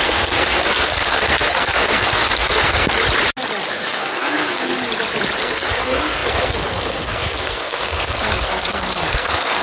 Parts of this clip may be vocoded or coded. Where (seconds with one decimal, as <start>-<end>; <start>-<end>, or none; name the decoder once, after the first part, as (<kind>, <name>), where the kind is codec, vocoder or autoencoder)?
0.0-3.0 (codec, SNAC); 3.7-4.7; 5.4-9.6

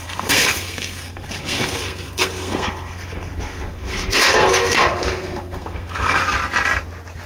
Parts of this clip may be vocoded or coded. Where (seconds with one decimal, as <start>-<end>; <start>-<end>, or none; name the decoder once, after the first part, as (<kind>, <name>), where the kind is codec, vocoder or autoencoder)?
0.0-6.2 (codec, SNAC)

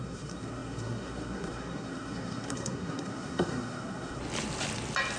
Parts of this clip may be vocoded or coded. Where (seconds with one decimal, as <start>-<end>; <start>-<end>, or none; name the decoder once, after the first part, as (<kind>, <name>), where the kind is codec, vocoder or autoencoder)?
0.0-4.2 (codec, SNAC)